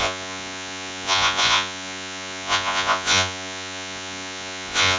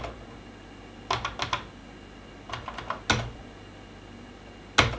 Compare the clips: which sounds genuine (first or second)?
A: second